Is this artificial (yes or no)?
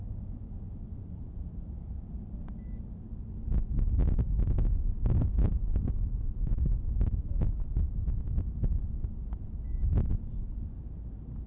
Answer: no